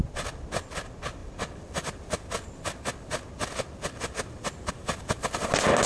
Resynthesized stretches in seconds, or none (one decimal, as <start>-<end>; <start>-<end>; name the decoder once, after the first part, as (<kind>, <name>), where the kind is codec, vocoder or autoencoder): none